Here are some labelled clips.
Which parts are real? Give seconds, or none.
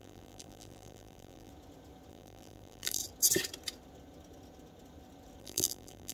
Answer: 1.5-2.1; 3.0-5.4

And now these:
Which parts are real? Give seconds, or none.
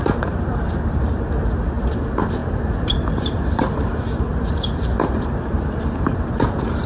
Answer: none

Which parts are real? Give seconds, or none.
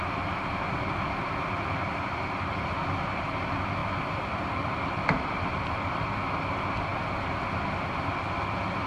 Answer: 0.0-3.8; 4.5-8.9